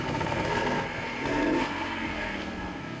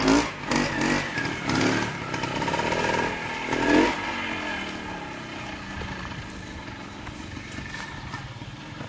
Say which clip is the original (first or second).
second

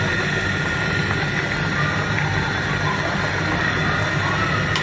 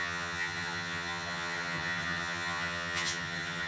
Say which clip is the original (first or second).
first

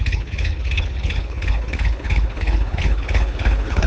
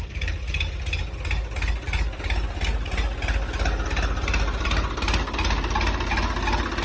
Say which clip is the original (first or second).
second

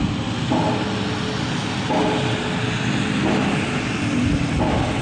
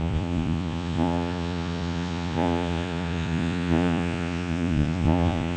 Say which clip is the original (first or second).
first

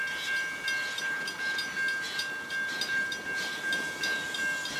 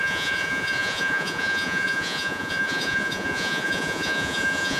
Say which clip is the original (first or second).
first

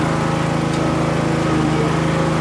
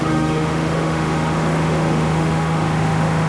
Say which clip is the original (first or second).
first